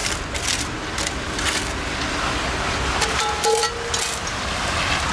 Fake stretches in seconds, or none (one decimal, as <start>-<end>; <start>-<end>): none